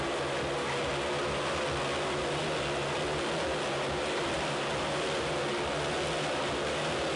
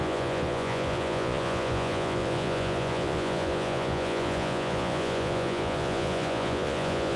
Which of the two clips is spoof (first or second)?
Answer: second